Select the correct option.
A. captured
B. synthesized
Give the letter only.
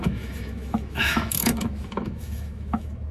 B